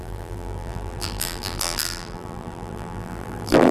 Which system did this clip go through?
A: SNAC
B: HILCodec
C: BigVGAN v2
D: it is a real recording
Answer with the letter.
C